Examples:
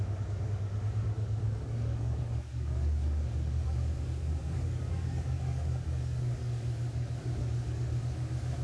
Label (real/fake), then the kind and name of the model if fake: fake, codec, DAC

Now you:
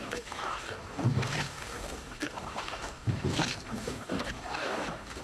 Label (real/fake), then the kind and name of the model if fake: fake, codec, DAC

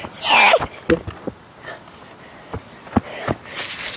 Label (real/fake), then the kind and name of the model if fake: real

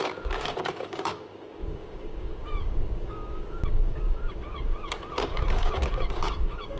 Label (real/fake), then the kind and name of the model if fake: fake, codec, DAC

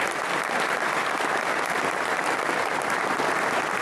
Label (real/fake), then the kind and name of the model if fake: real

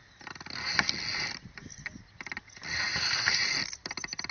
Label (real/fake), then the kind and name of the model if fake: real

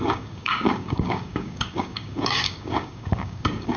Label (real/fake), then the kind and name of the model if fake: fake, codec, DAC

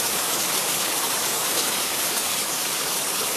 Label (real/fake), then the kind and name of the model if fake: fake, codec, DAC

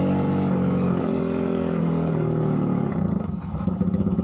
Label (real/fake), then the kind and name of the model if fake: fake, codec, DAC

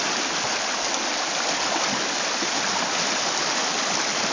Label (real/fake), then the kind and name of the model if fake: real